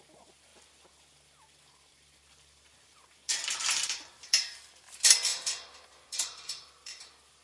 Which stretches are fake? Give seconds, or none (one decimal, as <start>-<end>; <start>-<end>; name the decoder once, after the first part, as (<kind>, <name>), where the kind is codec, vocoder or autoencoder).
5.3-7.0 (vocoder, BigVGAN v2)